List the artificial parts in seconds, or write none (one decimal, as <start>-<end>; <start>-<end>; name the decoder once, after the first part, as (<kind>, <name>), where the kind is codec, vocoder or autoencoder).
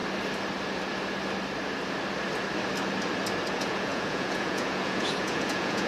3.5-5.9 (vocoder, Vocos)